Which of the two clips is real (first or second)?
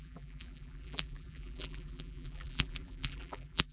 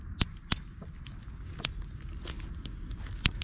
second